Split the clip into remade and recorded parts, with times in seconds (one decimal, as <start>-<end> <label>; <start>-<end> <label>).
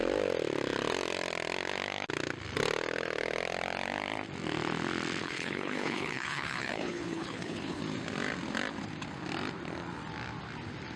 0.0-5.2 recorded; 5.2-7.8 remade; 7.8-11.0 recorded